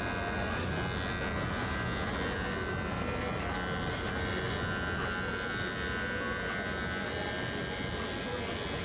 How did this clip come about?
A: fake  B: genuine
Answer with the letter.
B